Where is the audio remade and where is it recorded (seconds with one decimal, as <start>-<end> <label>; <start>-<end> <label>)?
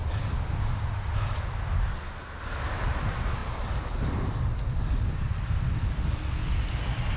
0.0-7.2 recorded